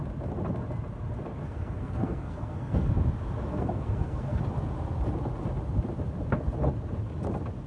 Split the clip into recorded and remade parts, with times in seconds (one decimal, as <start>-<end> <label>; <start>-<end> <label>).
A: 0.0-1.4 recorded; 1.4-2.9 remade; 2.9-3.5 recorded; 3.5-4.4 remade; 4.4-7.7 recorded